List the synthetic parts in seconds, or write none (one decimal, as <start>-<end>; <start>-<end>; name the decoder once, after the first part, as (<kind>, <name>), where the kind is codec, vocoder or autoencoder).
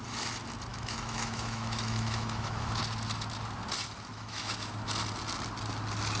0.7-2.8 (autoencoder, DAC-VAE); 4.1-4.7